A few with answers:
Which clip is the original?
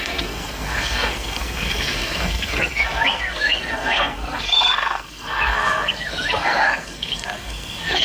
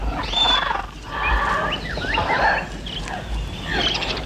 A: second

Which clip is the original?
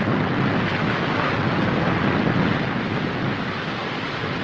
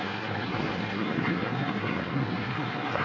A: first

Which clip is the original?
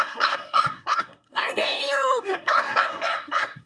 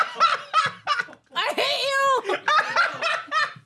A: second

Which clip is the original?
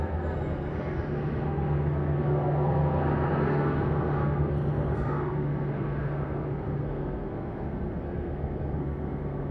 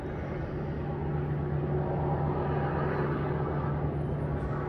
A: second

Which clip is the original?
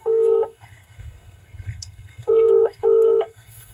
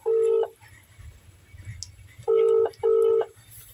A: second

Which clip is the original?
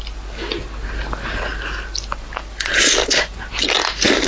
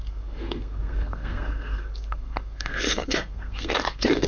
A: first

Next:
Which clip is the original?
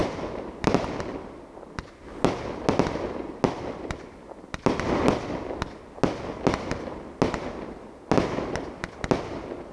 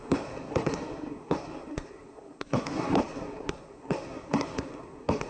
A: first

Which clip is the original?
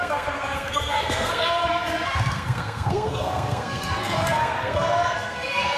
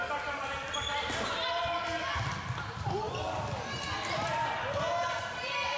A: second